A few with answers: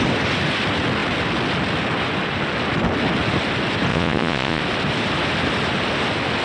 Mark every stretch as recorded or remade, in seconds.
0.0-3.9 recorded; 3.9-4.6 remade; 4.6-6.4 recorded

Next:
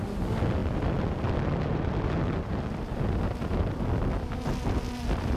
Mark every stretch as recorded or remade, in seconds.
0.0-5.4 recorded

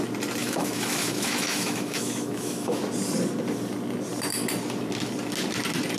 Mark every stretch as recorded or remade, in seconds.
0.0-0.4 recorded; 0.4-2.8 remade; 2.8-6.0 recorded

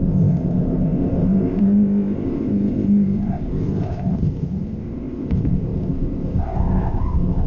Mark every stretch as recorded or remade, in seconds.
0.0-7.5 remade

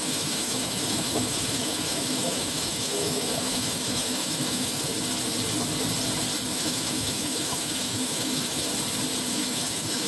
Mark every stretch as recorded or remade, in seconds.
0.0-4.9 remade; 4.9-6.5 recorded; 6.5-8.7 remade; 8.7-9.3 recorded; 9.3-10.1 remade

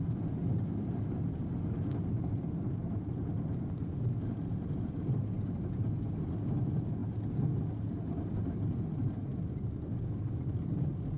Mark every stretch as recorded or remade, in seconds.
0.0-11.2 recorded

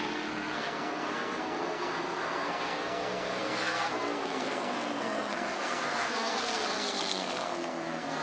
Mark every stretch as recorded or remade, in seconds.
0.0-8.2 remade

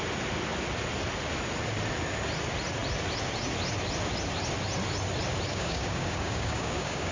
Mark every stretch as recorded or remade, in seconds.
0.0-5.5 recorded; 5.5-7.1 remade